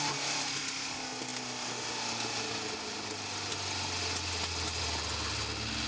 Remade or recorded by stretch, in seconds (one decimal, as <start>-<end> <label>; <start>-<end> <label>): 0.0-5.9 recorded